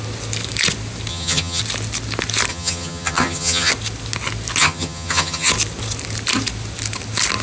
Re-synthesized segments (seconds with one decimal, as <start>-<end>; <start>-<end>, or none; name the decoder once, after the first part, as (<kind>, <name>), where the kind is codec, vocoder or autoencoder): 1.1-1.6 (vocoder, HiFi-GAN); 2.5-3.7; 4.6-5.5